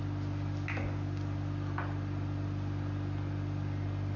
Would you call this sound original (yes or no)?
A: yes